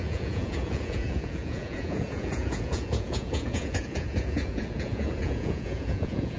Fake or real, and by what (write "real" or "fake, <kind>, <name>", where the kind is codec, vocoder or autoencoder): fake, vocoder, Vocos